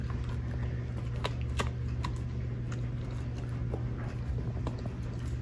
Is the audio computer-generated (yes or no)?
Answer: no